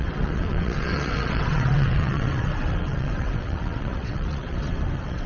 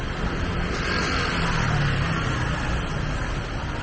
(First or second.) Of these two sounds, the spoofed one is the first